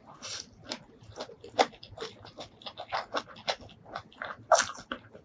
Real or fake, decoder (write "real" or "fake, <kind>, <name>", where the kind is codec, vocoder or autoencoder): real